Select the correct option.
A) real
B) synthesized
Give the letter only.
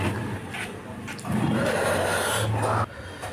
A